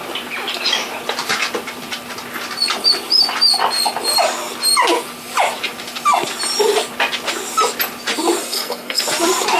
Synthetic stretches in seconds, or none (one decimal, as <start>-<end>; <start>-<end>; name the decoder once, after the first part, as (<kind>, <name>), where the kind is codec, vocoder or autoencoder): 8.4-9.0 (codec, SNAC)

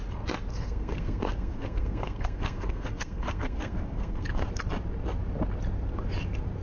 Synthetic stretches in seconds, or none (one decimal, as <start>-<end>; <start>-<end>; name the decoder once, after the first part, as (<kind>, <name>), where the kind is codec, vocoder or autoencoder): 0.5-4.5 (codec, SNAC)

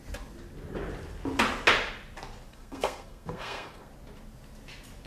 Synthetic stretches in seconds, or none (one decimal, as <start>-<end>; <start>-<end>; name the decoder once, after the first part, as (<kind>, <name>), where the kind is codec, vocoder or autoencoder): 2.5-3.9 (codec, SNAC)

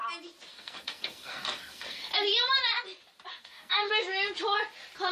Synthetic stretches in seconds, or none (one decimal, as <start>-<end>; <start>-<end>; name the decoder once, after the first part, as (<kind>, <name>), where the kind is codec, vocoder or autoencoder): 0.5-2.1 (codec, SNAC); 3.3-3.9

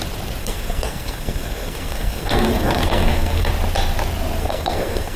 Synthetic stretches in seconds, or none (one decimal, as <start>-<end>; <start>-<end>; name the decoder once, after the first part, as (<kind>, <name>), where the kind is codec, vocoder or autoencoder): 0.4-3.5 (codec, SNAC); 4.4-5.2

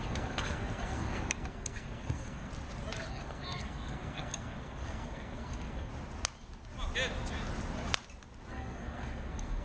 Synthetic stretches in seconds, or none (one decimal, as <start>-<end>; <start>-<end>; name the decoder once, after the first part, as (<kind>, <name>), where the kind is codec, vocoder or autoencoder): 0.0-2.5 (codec, SNAC); 3.1-5.9; 8.5-9.6

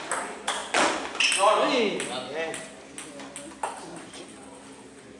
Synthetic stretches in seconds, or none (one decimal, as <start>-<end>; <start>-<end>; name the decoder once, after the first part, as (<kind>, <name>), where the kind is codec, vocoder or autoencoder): none

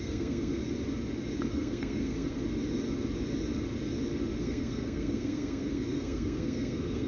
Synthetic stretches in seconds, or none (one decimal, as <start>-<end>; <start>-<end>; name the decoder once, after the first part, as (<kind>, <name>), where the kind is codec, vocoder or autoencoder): 0.0-0.6 (codec, SNAC); 1.5-2.4; 4.4-7.1